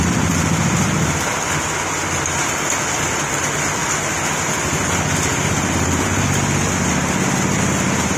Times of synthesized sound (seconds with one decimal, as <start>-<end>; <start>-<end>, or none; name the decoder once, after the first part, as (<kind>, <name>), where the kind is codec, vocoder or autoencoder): none